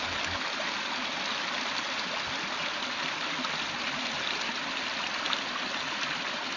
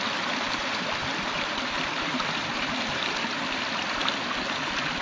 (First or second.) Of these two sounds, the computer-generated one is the second